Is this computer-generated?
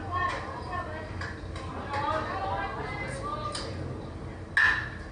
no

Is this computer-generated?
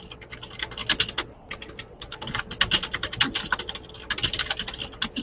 no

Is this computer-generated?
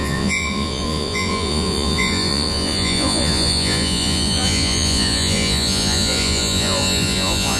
yes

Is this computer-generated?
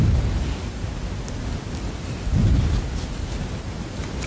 no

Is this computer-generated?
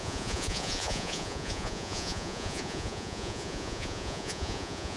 yes